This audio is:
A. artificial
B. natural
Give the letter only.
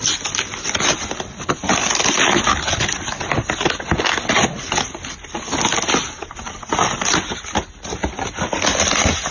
B